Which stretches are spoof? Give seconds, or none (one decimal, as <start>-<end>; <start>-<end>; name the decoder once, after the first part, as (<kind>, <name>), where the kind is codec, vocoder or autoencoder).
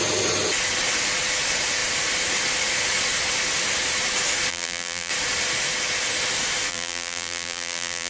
4.5-5.1 (vocoder, BigVGAN v2); 6.7-8.1